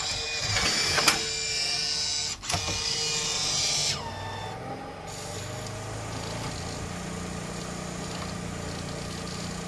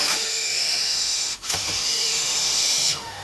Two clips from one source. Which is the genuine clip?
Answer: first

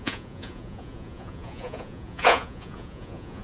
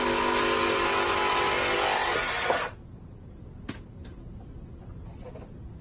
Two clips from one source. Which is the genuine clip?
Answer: second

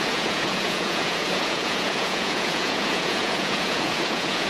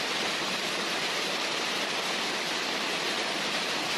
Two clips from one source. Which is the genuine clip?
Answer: second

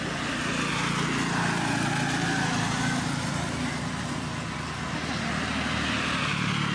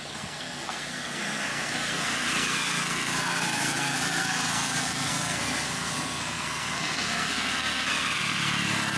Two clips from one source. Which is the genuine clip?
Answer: first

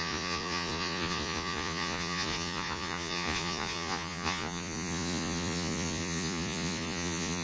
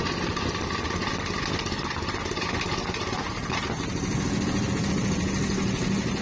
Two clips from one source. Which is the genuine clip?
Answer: second